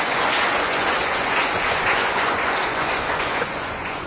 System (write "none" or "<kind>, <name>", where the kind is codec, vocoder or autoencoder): vocoder, Vocos